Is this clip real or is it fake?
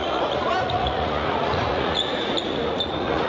fake